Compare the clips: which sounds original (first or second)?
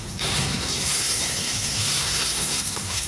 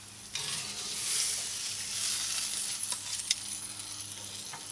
second